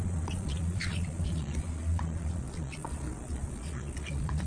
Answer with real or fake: fake